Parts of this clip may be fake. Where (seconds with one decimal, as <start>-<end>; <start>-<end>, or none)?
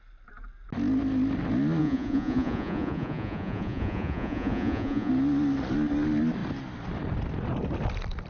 1.8-5.1